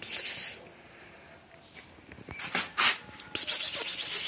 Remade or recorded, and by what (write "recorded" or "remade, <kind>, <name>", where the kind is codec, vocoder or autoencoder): recorded